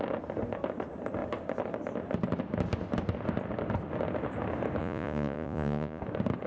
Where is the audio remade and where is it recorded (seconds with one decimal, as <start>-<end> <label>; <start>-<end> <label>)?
0.0-4.8 recorded; 4.8-6.0 remade; 6.0-6.5 recorded